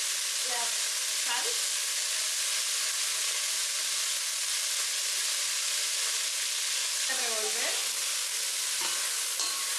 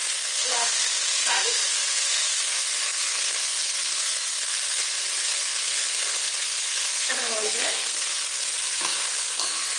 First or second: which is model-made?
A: second